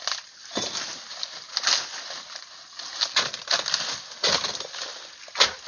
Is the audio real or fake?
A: real